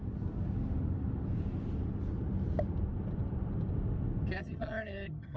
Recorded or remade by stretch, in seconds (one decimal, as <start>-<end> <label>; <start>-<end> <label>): 0.0-4.4 recorded; 4.4-5.4 remade